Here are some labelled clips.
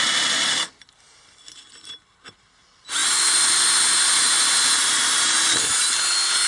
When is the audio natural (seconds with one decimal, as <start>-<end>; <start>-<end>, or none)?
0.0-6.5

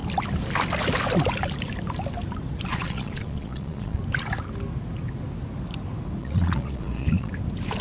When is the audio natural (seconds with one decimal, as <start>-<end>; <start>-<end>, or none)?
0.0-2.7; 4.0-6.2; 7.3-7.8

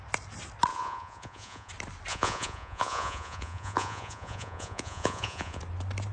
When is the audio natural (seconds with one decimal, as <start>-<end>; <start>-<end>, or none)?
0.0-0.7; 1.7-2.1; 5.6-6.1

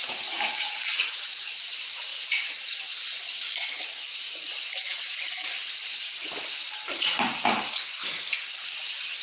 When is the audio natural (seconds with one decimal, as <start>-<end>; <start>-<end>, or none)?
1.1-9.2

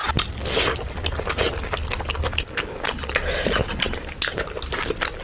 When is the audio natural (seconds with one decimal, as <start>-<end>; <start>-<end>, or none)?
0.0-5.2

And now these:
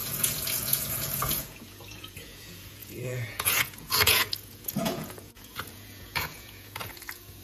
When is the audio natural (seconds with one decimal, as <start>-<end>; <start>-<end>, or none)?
none